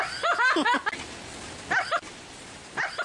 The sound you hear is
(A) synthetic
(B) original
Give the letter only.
B